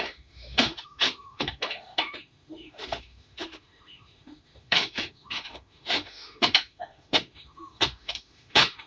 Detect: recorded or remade remade